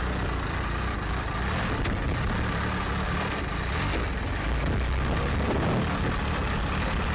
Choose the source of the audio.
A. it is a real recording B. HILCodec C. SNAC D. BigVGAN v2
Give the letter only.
A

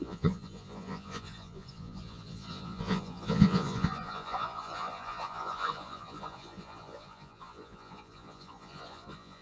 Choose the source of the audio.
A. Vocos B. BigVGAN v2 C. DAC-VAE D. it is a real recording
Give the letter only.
A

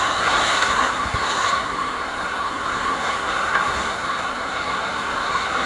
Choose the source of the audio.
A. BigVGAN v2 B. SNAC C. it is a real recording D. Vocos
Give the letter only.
B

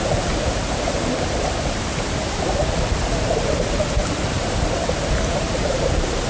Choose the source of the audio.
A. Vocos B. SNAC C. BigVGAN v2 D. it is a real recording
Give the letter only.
C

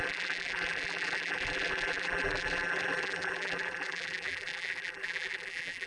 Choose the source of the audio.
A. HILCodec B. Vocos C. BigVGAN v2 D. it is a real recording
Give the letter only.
C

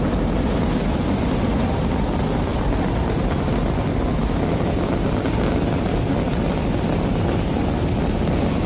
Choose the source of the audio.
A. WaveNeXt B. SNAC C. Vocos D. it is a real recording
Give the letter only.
D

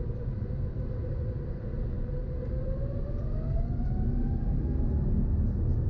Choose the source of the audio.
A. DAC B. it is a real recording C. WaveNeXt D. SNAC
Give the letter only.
B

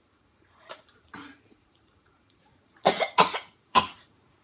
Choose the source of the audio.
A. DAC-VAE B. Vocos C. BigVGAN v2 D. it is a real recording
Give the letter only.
B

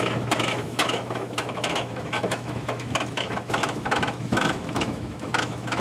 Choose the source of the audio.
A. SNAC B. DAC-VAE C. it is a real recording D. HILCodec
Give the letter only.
B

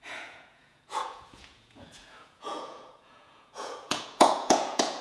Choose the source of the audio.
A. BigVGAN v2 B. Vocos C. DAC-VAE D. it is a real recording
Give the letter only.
B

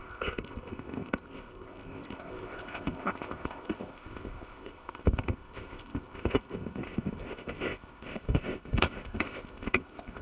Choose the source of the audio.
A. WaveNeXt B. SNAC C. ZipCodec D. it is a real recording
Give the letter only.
C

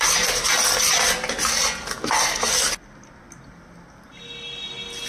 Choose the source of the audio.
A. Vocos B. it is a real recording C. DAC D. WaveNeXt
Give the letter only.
B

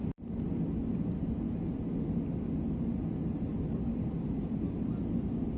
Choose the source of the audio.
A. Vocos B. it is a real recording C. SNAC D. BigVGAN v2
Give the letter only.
B